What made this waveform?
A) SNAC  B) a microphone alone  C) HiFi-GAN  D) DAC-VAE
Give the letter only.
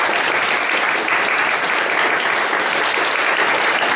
B